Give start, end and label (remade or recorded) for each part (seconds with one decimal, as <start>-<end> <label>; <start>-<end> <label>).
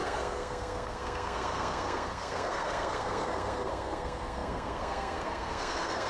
0.0-6.1 remade